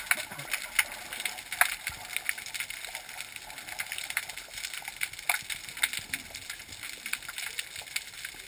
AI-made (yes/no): no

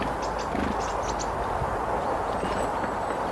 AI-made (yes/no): no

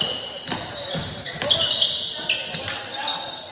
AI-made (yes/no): no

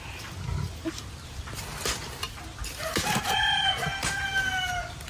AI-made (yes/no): no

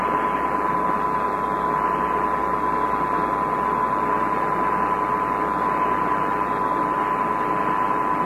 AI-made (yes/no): no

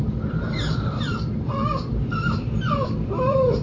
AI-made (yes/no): yes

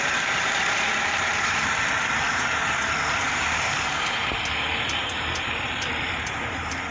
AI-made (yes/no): yes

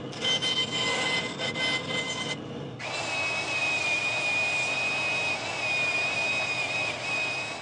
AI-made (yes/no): no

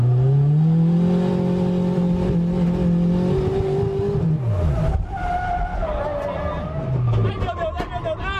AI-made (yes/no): no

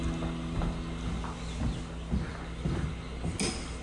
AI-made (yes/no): no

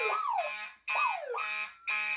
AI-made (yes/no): no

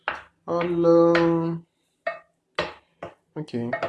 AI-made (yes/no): no